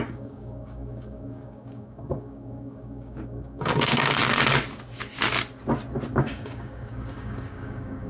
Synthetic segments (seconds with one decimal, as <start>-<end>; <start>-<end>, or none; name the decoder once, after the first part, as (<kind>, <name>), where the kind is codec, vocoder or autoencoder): 0.0-4.2 (codec, DAC); 6.1-8.1

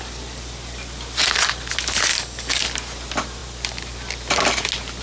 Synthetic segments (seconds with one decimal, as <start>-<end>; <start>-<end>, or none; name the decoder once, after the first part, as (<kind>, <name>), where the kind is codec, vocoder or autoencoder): 2.1-2.6 (codec, DAC)

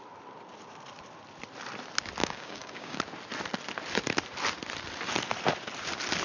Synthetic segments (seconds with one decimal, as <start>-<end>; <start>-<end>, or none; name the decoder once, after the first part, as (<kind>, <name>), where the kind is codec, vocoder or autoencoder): 2.2-3.0 (codec, DAC)

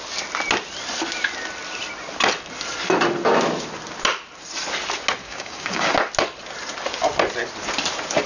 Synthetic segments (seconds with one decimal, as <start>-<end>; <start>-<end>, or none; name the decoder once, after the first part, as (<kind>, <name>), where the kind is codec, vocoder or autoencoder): 5.2-5.9 (codec, DAC)

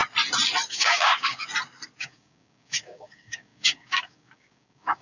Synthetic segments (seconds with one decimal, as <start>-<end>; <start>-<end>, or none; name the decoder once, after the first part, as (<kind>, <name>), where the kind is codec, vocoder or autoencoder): 0.7-1.4 (codec, DAC); 2.0-5.0

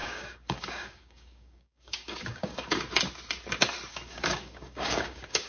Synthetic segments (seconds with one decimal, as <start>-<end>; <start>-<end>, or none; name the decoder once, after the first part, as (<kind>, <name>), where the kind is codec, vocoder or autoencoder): 0.0-3.0 (codec, DAC); 3.9-5.5

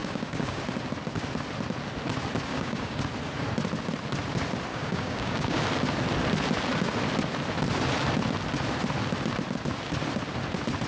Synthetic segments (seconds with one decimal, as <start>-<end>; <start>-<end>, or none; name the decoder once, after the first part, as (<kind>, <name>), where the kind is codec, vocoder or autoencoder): 0.0-0.6 (codec, DAC); 2.5-3.0; 4.7-5.6

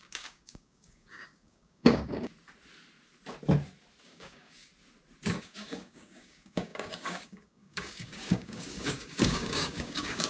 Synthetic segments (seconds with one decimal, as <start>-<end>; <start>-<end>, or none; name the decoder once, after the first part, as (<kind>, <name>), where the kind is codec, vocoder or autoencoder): 0.0-2.3 (codec, DAC); 4.0-4.7; 5.4-10.3